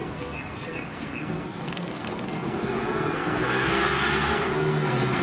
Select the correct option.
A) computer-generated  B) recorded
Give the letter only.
A